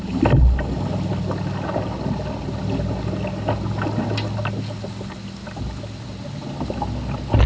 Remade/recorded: recorded